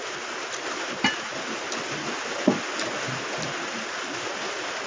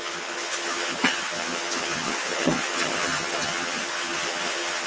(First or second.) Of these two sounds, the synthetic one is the second